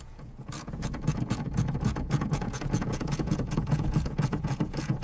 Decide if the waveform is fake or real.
fake